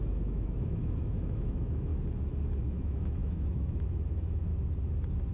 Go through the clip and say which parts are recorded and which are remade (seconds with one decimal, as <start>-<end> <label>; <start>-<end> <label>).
0.0-1.9 remade; 1.9-2.6 recorded; 2.6-4.5 remade; 4.5-5.3 recorded

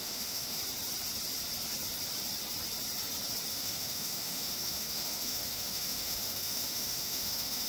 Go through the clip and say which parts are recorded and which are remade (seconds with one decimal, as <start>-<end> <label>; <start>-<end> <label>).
0.0-0.6 remade; 0.6-3.5 recorded; 3.5-7.7 remade